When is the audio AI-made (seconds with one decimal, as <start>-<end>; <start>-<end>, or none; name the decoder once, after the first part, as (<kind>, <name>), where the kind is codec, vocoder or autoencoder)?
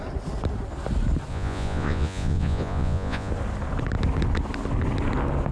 1.3-3.3 (vocoder, Vocos)